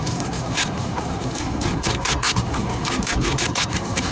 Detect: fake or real fake